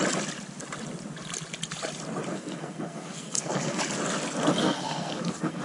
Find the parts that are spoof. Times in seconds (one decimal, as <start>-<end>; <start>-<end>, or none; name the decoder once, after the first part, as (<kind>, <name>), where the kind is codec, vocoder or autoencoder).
2.3-3.8 (codec, SNAC); 4.6-5.6